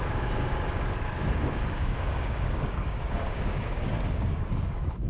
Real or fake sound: fake